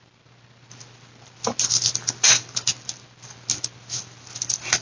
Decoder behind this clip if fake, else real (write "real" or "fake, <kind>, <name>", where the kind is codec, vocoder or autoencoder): real